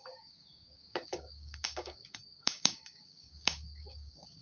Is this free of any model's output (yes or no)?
no